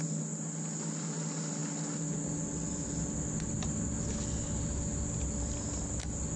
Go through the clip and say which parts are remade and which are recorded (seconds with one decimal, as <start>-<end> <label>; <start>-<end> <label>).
0.0-6.4 recorded